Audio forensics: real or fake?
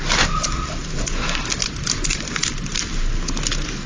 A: real